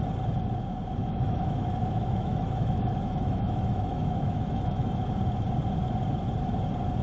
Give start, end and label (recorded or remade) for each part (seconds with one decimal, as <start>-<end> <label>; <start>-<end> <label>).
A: 0.0-1.0 recorded; 1.0-5.0 remade; 5.0-7.0 recorded